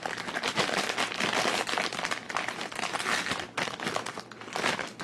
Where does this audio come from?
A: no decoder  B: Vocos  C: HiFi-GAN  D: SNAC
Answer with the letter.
A